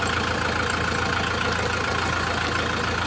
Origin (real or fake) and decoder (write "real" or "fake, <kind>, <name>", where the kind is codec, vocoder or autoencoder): real